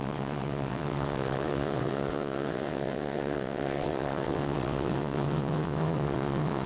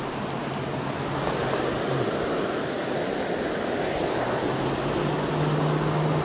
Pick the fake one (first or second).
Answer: first